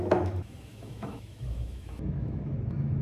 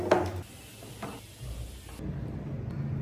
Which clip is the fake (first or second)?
first